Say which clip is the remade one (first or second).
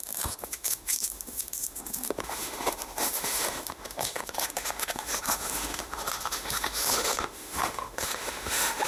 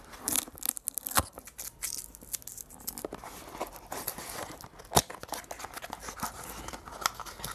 first